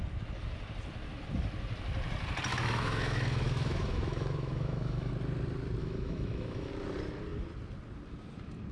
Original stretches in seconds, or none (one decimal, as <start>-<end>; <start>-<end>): 0.0-2.5; 5.1-5.8; 6.7-8.7